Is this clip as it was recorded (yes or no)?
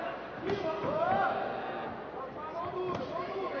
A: yes